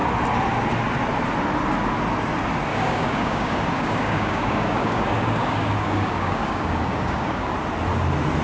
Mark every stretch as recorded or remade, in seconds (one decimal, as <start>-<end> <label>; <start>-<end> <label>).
0.0-2.7 recorded; 2.7-7.5 remade; 7.5-8.4 recorded